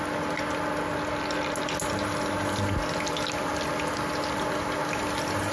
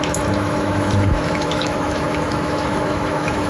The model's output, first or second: second